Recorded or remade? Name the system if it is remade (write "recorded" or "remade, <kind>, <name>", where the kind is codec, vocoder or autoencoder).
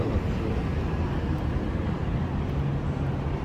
recorded